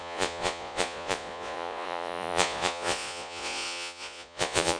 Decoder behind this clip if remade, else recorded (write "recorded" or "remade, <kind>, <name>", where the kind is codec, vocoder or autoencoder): remade, vocoder, Vocos